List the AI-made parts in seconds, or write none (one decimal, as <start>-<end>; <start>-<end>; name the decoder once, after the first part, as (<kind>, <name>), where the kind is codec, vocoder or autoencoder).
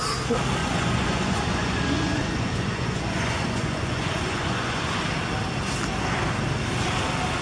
0.6-5.0 (vocoder, Vocos)